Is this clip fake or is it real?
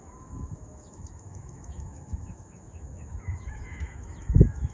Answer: fake